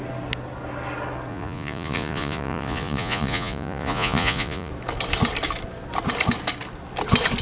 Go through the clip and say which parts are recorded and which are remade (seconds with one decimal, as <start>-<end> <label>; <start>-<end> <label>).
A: 0.0-1.3 recorded; 1.3-4.7 remade; 4.7-7.4 recorded